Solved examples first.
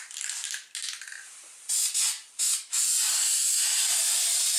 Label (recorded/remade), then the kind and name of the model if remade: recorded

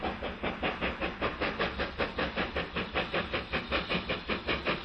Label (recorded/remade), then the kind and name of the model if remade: recorded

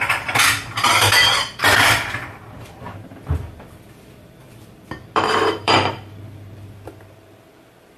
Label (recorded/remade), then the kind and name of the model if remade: remade, vocoder, BigVGAN v2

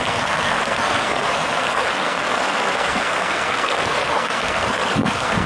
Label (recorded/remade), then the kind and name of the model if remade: remade, codec, SNAC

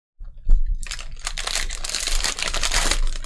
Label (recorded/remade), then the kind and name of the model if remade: remade, vocoder, BigVGAN v2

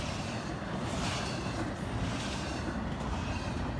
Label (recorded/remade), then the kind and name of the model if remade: recorded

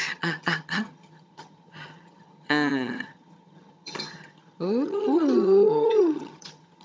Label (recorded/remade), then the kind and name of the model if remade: remade, vocoder, HiFi-GAN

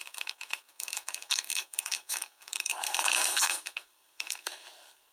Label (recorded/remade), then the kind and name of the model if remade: remade, codec, SNAC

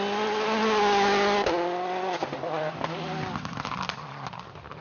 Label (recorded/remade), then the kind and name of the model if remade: recorded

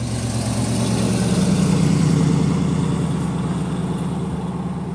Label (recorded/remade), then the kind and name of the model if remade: recorded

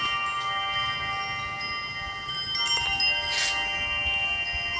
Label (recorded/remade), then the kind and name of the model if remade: recorded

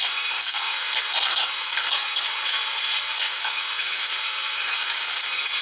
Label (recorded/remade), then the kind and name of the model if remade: remade, codec, SNAC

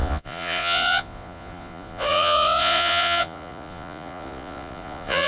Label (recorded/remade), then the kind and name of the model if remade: remade, vocoder, Vocos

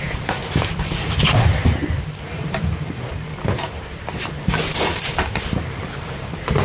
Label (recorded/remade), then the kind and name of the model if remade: remade, vocoder, BigVGAN v2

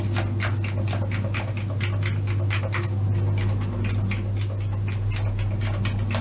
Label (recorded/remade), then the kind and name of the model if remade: recorded